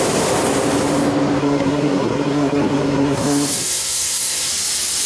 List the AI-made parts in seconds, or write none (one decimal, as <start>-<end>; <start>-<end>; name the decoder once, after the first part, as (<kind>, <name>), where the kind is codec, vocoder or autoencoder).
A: 1.4-4.5 (codec, SNAC)